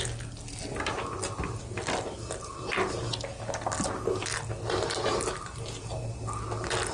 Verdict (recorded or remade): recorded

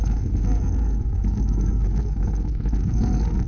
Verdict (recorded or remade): remade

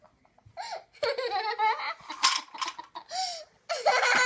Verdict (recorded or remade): recorded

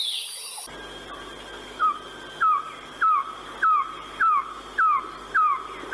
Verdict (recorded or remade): recorded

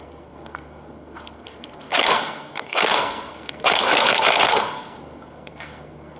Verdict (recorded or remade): remade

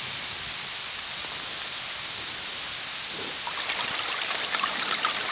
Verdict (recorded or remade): recorded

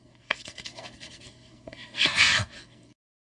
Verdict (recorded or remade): remade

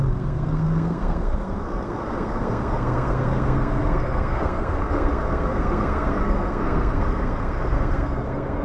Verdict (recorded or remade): remade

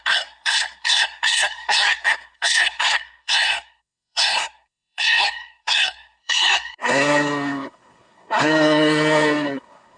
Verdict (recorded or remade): remade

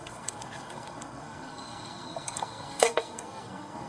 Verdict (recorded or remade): remade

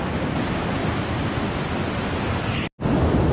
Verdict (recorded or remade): recorded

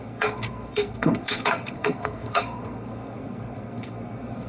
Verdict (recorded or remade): remade